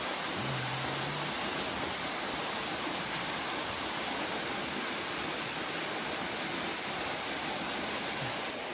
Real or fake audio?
real